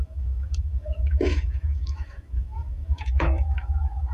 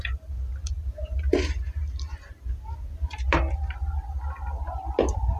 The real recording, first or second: second